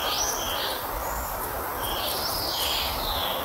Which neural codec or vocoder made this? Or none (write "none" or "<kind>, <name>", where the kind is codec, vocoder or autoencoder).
none